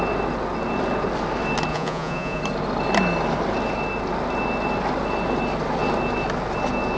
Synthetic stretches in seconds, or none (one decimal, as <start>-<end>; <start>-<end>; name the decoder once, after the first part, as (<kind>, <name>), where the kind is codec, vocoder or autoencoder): 1.7-2.4 (vocoder, Vocos)